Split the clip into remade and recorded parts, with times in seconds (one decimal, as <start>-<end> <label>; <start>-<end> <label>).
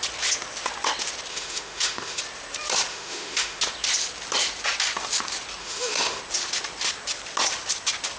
0.0-1.3 recorded; 1.3-2.2 remade; 2.2-2.9 recorded; 2.9-3.6 remade; 3.6-5.6 recorded; 5.6-6.2 remade; 6.2-8.2 recorded